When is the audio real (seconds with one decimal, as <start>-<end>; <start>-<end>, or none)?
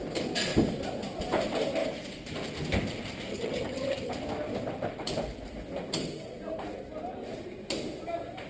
0.0-3.3; 4.1-8.5